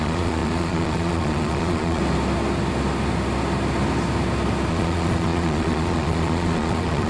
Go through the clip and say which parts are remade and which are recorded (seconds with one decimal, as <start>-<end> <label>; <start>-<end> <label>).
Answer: 0.0-2.0 remade; 2.0-4.7 recorded; 4.7-7.1 remade